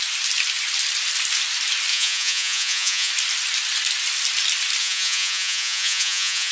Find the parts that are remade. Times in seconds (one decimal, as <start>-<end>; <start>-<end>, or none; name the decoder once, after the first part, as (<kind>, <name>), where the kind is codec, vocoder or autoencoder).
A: 1.9-3.1 (vocoder, Vocos); 4.8-6.5